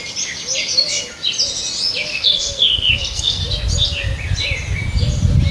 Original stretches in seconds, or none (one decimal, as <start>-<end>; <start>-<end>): 0.0-2.1; 3.4-5.5